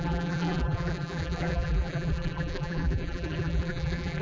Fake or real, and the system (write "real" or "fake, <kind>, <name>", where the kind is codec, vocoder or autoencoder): fake, vocoder, BigVGAN v2